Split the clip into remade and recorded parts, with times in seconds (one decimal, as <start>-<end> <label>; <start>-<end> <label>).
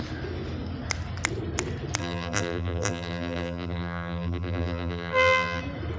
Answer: 0.0-2.0 recorded; 2.0-5.6 remade; 5.6-6.0 recorded